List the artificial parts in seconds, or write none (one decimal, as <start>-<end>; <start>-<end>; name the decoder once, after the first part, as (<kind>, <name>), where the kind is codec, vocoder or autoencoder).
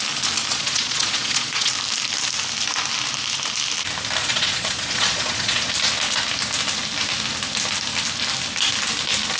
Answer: 0.5-1.7 (vocoder, Vocos); 4.2-5.7